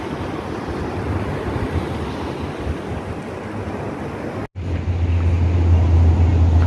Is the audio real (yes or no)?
yes